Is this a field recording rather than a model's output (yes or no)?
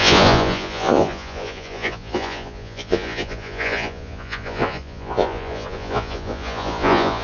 no